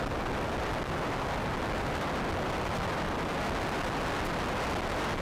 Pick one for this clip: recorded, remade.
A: recorded